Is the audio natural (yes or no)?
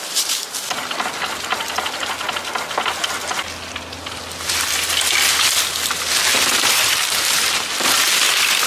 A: yes